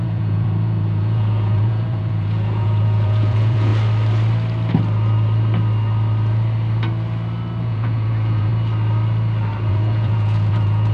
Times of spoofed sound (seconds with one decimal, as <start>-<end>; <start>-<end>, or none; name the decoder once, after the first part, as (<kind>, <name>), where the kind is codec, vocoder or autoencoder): 0.0-3.7 (vocoder, Vocos); 7.6-8.5; 9.7-10.9